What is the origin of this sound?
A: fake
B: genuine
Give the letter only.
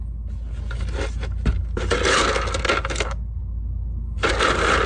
B